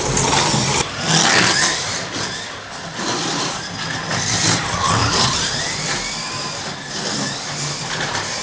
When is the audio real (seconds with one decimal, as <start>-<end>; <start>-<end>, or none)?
0.0-5.0; 5.6-8.4